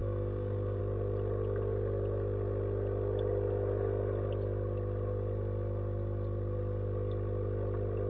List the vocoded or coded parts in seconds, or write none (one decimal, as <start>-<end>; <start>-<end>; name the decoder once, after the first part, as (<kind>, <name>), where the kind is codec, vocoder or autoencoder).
0.0-0.8 (codec, DAC)